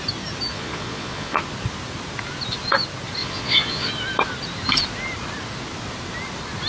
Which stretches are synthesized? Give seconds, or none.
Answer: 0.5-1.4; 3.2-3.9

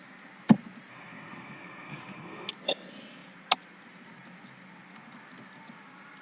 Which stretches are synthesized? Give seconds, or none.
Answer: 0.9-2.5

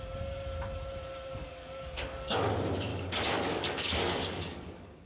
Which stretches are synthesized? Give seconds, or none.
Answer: 1.3-2.5; 2.9-5.1

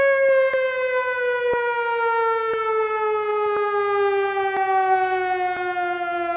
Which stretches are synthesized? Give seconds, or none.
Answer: none